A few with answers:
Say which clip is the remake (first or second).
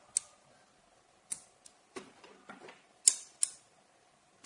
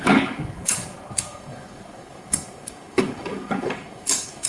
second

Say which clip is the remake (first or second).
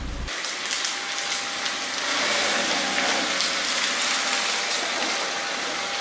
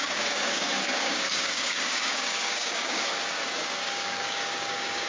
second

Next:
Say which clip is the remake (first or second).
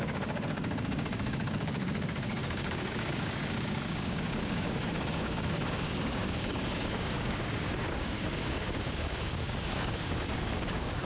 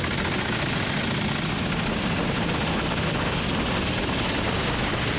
first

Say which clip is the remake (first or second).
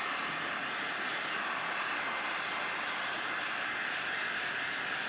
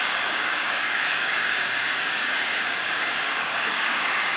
second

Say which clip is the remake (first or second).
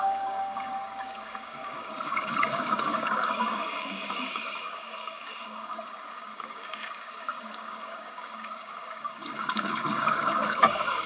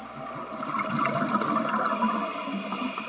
first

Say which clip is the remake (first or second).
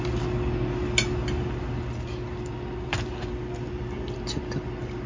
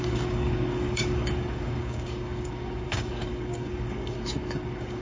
second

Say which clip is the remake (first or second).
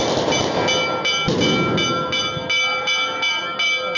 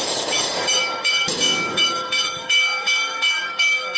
second